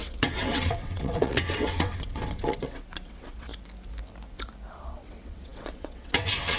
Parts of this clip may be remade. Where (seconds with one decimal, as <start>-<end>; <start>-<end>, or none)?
0.0-3.5; 4.7-6.6